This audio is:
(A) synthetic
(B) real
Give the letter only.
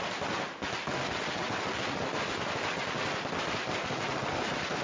B